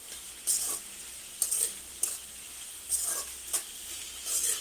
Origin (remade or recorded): recorded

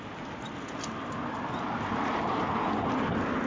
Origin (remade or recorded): recorded